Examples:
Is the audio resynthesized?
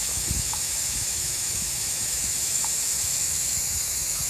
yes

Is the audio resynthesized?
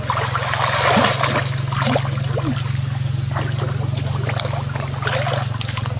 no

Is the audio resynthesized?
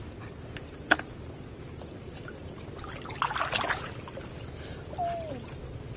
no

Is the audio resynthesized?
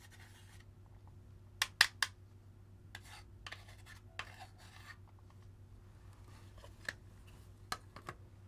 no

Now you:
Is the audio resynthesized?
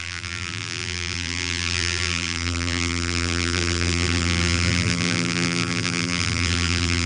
yes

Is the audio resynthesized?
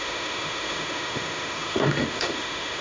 yes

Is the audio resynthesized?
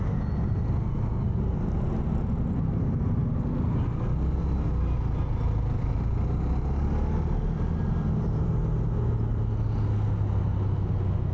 no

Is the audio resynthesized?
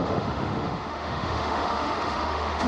yes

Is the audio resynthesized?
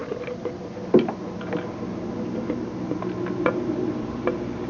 no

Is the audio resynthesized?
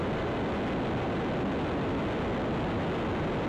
no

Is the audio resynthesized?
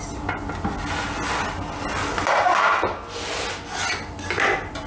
no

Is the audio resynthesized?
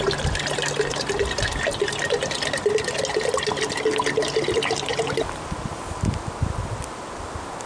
no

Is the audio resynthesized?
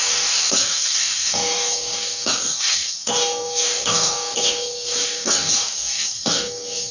yes